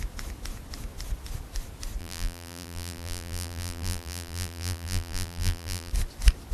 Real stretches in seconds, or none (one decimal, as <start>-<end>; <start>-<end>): 0.0-2.0; 5.9-6.5